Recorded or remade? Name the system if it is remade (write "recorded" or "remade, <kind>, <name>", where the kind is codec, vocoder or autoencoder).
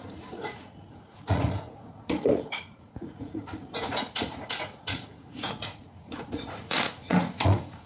remade, vocoder, Vocos